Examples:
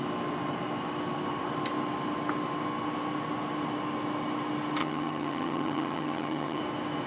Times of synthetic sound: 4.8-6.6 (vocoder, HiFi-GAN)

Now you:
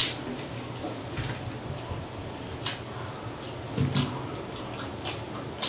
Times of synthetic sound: none

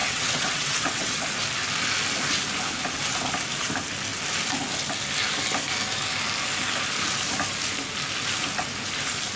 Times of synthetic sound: 0.0-1.2 (vocoder, WaveNeXt)

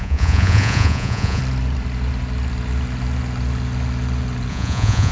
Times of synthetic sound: 0.0-1.4 (vocoder, Vocos); 4.5-5.1

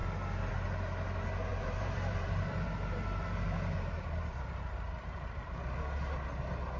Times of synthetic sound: 1.5-5.6 (vocoder, BigVGAN v2)

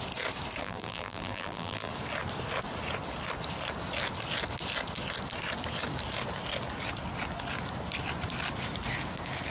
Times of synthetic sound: 0.6-1.9 (vocoder, BigVGAN v2)